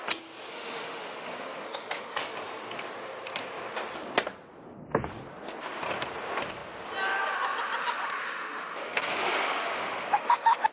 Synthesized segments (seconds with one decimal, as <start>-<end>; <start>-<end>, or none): 0.5-2.1; 7.8-10.7